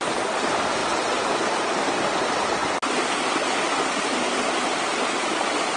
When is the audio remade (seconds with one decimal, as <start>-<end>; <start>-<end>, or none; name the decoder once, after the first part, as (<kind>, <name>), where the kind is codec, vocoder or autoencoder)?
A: none